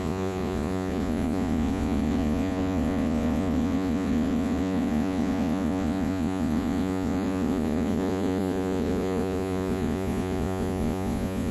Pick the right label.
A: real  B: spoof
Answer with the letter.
B